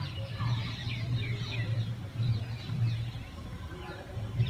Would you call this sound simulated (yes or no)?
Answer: no